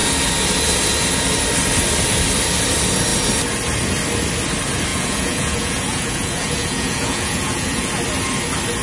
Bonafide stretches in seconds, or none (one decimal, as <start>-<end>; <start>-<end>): 0.0-4.9; 7.9-8.8